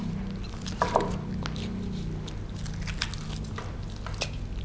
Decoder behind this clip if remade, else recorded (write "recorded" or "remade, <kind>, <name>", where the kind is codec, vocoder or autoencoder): recorded